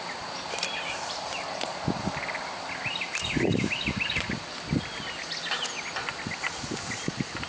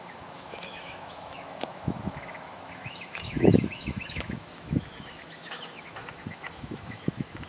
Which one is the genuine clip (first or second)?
first